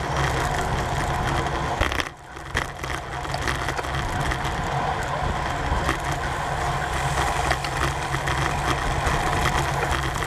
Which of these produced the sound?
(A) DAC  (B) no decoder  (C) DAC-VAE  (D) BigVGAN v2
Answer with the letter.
B